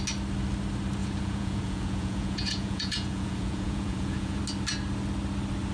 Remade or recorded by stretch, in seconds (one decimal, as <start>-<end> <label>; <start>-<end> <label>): 0.0-1.0 recorded; 1.0-4.4 remade; 4.4-5.7 recorded